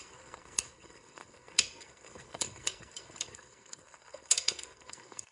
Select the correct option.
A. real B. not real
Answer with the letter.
B